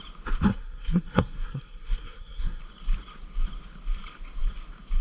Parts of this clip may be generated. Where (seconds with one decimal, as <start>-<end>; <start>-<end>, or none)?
0.5-2.6